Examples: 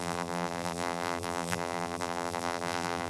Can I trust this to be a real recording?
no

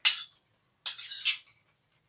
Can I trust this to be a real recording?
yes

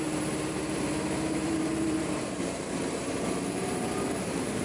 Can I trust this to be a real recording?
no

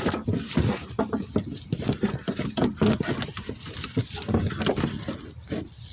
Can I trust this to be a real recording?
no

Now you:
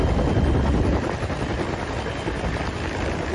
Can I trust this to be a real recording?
yes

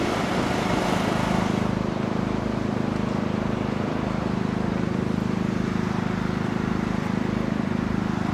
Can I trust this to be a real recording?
no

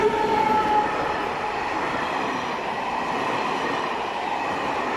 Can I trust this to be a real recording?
no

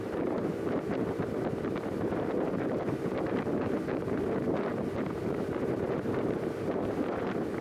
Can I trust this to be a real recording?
no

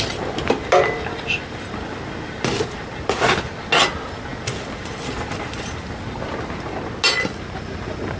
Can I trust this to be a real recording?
yes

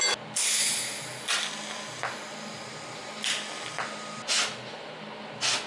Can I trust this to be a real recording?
yes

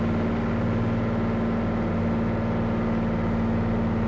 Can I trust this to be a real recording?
yes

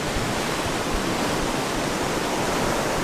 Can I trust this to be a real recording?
no